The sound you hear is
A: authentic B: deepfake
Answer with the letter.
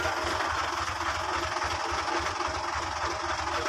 A